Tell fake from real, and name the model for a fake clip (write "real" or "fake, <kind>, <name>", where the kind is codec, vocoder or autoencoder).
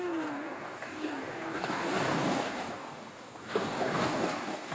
fake, codec, DAC